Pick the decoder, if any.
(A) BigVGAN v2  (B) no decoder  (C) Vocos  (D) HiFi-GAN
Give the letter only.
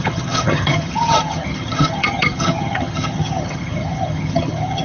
D